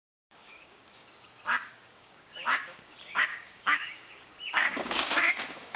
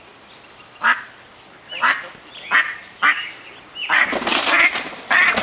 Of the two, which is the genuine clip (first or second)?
second